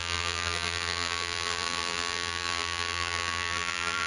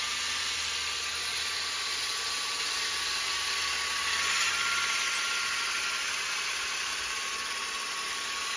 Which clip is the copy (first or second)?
first